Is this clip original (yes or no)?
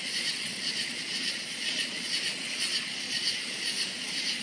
no